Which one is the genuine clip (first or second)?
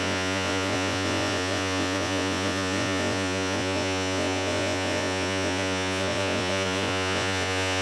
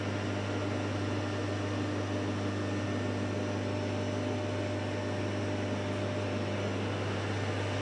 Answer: second